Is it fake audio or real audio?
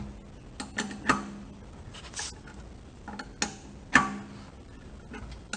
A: real